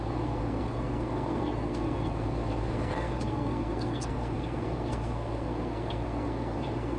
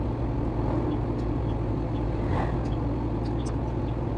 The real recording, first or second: second